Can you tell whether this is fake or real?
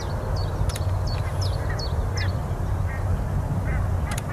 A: real